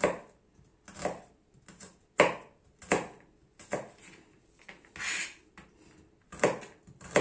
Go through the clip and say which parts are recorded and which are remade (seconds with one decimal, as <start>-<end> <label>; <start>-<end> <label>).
0.0-7.2 recorded